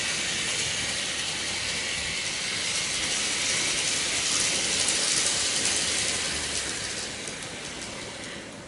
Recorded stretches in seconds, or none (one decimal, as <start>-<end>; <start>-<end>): 0.0-8.7